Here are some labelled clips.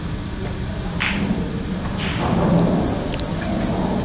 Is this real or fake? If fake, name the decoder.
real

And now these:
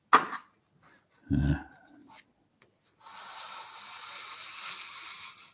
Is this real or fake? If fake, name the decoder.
real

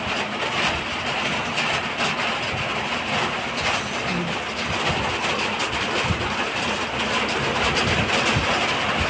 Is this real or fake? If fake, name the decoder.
real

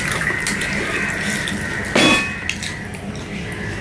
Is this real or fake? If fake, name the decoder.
real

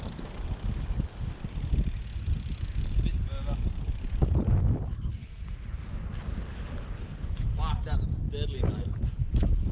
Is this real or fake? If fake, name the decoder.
real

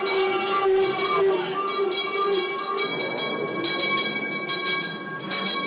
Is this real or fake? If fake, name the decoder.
real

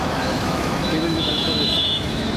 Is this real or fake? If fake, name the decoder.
fake, autoencoder, DAC-VAE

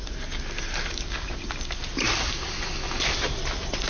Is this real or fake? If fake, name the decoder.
real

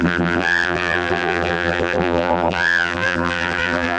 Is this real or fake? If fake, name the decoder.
fake, vocoder, BigVGAN v2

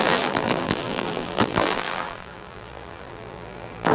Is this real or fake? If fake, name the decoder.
fake, vocoder, BigVGAN v2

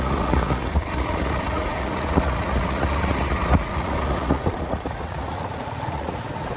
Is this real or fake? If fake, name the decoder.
fake, vocoder, Vocos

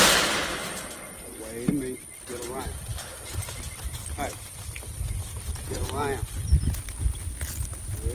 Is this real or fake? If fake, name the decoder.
real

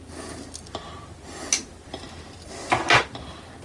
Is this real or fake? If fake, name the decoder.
real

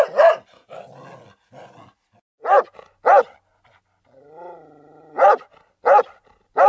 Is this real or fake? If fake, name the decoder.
real